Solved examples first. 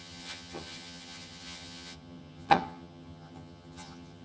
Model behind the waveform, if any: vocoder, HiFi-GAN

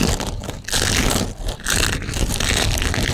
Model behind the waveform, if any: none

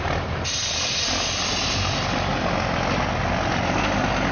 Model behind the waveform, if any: none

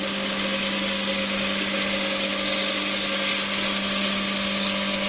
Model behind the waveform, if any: none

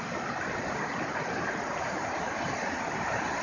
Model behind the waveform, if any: none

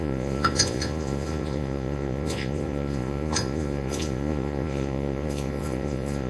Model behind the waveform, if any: vocoder, Vocos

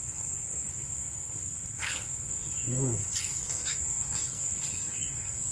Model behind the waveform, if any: codec, SNAC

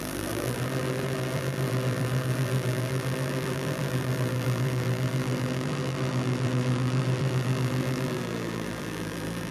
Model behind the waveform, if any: vocoder, BigVGAN v2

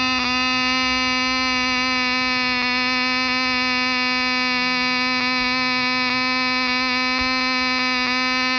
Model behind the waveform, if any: none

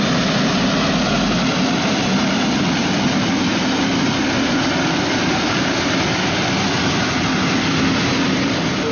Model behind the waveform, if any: none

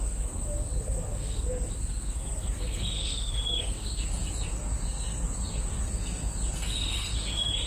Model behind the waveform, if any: codec, SNAC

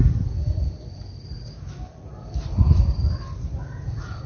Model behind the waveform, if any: none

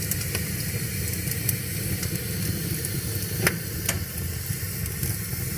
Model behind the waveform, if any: none